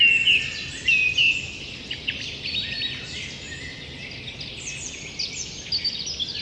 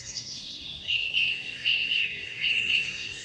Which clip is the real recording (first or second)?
first